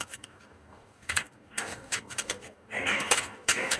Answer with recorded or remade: remade